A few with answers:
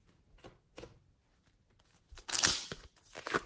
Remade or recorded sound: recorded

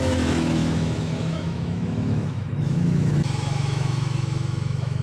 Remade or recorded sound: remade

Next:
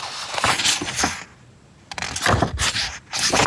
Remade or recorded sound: recorded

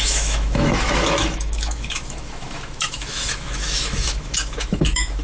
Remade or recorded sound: remade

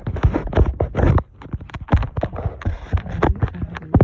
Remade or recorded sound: recorded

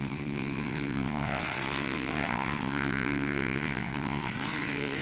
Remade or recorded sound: remade